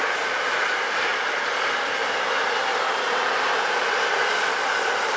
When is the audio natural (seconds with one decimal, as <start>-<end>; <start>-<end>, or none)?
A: 0.0-5.2